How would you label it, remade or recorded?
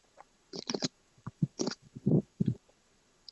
remade